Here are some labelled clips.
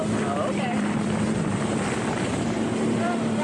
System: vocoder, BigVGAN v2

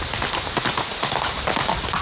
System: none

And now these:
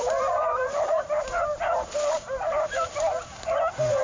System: vocoder, BigVGAN v2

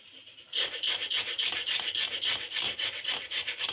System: vocoder, BigVGAN v2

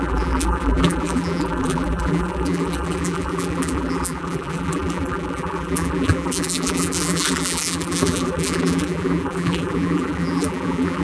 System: vocoder, BigVGAN v2